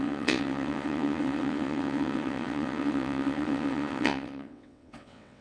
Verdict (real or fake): fake